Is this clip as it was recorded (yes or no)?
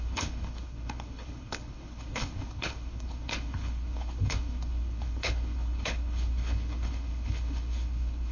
no